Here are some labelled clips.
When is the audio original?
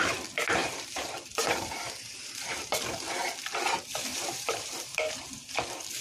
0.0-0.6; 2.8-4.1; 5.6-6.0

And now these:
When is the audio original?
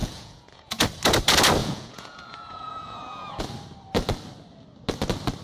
0.8-1.6; 3.4-5.4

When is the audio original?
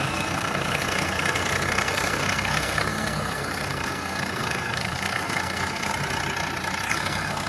5.9-6.9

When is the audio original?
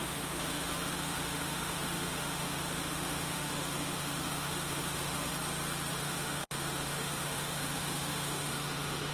5.3-5.9